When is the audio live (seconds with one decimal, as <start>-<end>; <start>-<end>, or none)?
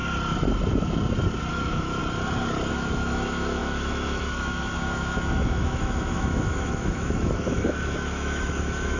0.0-1.5; 2.0-2.7